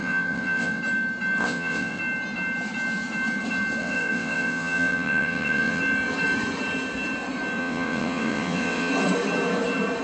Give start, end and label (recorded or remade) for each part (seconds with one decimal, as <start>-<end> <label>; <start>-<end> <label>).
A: 0.0-0.8 remade; 0.8-1.4 recorded; 1.4-2.0 remade; 2.0-3.8 recorded; 3.8-5.8 remade; 5.8-7.6 recorded; 7.6-8.9 remade; 8.9-10.0 recorded